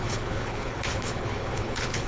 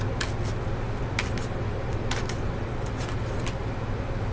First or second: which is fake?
first